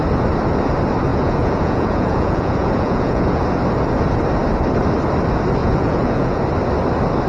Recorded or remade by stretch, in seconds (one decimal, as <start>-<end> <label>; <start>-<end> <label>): 0.0-1.1 recorded; 1.1-3.4 remade; 3.4-5.6 recorded; 5.6-6.4 remade; 6.4-7.3 recorded

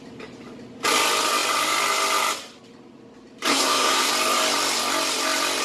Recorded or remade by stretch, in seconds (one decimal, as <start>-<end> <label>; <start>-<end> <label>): 0.0-3.5 recorded; 3.5-4.1 remade; 4.1-5.6 recorded

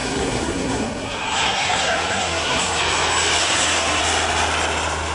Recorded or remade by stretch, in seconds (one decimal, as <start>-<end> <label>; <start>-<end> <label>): 0.0-2.8 remade; 2.8-3.4 recorded; 3.4-4.0 remade; 4.0-5.1 recorded